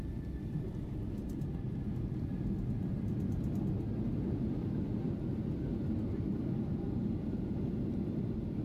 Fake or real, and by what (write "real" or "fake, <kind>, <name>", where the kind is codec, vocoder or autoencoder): real